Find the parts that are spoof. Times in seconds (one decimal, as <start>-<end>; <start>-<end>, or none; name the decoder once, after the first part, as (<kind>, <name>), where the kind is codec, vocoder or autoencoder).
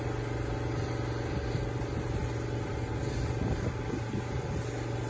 none